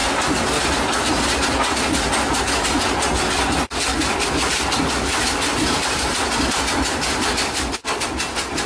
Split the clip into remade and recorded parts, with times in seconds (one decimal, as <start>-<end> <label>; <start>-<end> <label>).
0.0-3.9 recorded; 3.9-6.4 remade; 6.4-8.7 recorded